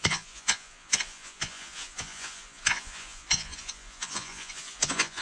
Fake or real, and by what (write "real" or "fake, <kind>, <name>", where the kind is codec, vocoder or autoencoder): fake, vocoder, Vocos